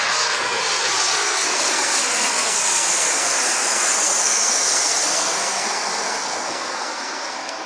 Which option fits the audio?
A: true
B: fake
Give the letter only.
B